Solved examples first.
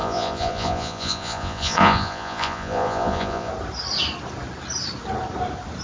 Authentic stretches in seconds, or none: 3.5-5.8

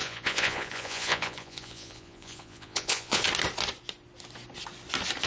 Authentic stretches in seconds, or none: 3.2-5.3

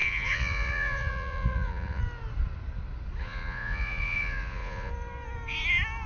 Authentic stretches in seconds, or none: 2.0-3.2; 4.9-6.1

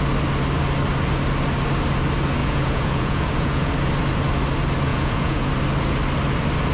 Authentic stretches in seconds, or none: 0.0-2.4; 3.7-4.9; 5.5-6.7

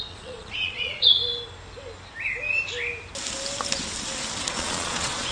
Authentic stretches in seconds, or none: 1.2-4.4

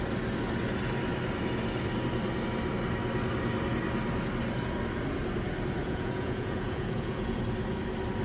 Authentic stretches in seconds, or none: 0.0-5.8; 7.4-8.2

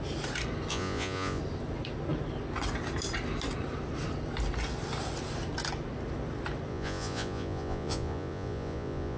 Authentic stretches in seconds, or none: 0.0-0.7; 1.4-6.7